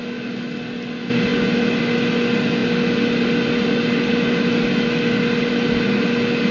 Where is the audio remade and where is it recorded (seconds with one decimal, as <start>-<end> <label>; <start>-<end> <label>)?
0.0-6.5 recorded